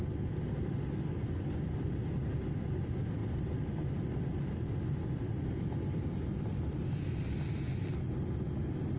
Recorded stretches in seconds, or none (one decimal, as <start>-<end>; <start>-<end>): 0.0-9.0